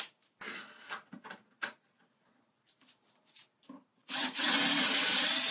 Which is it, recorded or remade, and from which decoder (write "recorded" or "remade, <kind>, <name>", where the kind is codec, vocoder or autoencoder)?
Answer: recorded